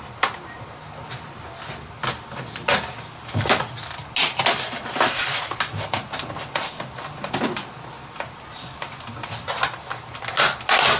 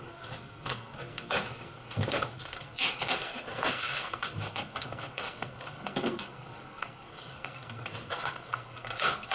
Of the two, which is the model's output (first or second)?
second